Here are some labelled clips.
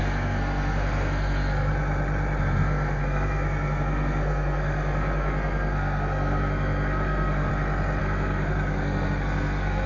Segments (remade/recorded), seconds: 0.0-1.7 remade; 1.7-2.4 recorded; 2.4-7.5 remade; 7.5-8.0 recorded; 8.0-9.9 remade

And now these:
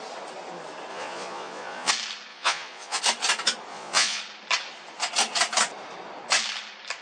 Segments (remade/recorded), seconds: 0.0-0.9 recorded; 0.9-1.9 remade; 1.9-2.3 recorded; 2.3-3.0 remade; 3.0-3.7 recorded; 3.7-4.2 remade; 4.2-7.0 recorded

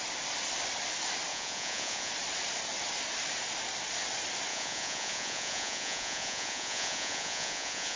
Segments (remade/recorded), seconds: 0.0-1.3 recorded; 1.3-2.1 remade; 2.1-4.5 recorded; 4.5-8.0 remade

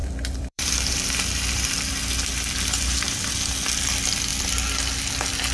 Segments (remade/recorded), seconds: 0.0-3.3 remade; 3.3-5.5 recorded

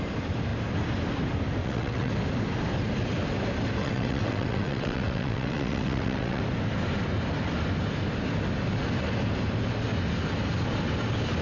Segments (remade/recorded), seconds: 0.0-1.6 recorded; 1.6-2.1 remade; 2.1-3.8 recorded; 3.8-6.4 remade; 6.4-11.4 recorded

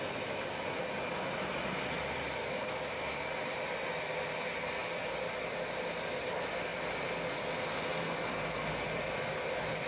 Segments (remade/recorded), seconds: 0.0-2.4 recorded; 2.4-3.1 remade; 3.1-9.9 recorded

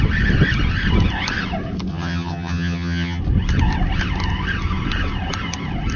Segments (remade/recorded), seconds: 0.0-1.9 recorded; 1.9-3.2 remade; 3.2-6.0 recorded

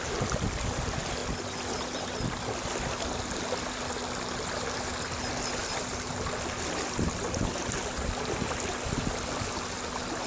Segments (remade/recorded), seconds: 0.0-10.3 recorded